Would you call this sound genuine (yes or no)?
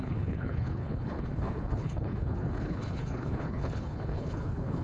no